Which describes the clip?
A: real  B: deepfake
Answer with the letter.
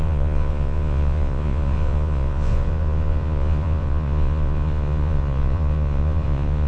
B